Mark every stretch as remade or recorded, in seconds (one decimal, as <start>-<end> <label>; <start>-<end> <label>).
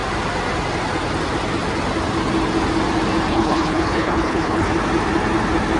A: 0.0-3.3 recorded; 3.3-4.7 remade; 4.7-5.8 recorded